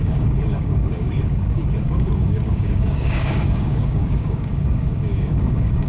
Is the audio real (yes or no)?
no